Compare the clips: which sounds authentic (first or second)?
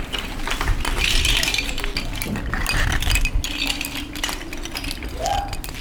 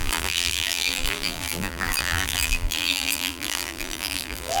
first